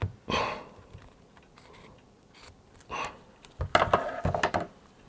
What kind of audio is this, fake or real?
real